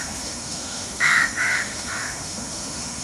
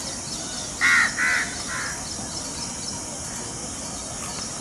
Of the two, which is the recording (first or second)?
second